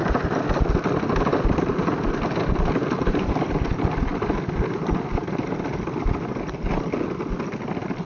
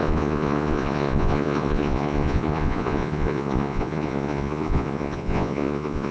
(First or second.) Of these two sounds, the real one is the first